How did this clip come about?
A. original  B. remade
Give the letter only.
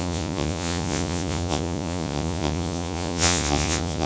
B